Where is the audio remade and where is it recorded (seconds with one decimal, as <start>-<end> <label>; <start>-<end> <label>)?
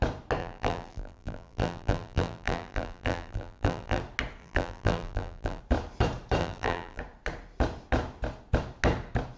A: 0.0-0.4 recorded; 0.4-4.0 remade; 4.0-4.4 recorded; 4.4-5.6 remade; 5.6-6.4 recorded; 6.4-7.0 remade; 7.0-9.4 recorded